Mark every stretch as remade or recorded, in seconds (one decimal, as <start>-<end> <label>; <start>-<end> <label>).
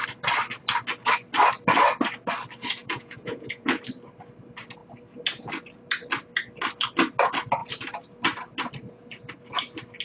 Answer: 0.0-2.8 recorded; 2.8-3.8 remade; 3.8-10.0 recorded